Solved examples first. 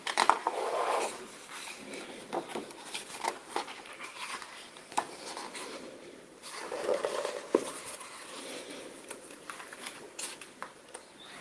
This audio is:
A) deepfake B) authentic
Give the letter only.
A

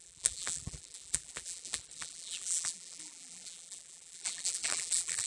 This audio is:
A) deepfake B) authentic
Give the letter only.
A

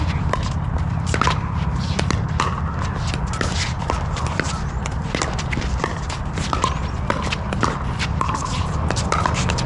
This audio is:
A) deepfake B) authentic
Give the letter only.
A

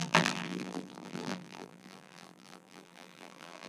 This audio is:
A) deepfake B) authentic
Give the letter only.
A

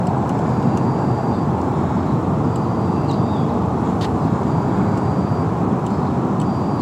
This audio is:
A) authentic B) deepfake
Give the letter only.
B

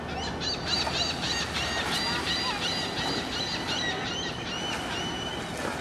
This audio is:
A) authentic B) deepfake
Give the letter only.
A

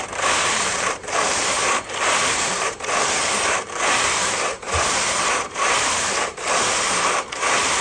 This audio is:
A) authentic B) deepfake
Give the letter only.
B